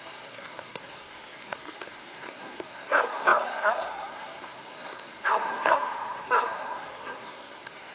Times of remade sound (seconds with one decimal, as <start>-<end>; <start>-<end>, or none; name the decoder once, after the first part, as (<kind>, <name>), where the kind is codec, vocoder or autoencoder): 0.0-7.9 (codec, SNAC)

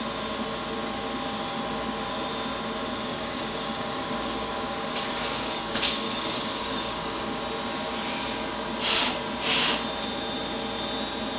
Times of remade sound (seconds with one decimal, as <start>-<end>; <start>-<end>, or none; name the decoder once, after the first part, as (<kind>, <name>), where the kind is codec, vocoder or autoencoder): 3.1-7.4 (codec, DAC)

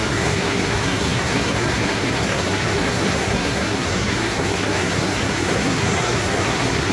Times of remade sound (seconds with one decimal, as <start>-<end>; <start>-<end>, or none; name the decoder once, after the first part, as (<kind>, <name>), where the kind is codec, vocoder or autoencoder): 0.0-6.9 (codec, SNAC)

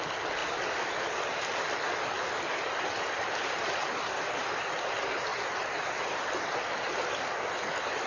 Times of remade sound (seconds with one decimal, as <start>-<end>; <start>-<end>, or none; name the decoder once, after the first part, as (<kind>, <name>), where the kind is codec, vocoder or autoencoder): none